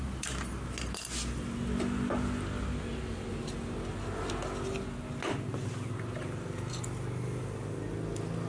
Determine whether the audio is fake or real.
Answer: real